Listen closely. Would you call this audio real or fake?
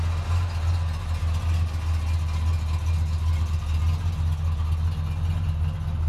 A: real